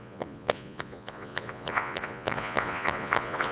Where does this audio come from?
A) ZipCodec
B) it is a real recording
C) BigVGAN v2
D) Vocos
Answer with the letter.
D